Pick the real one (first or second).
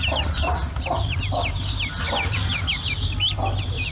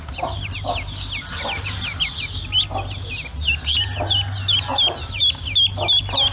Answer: second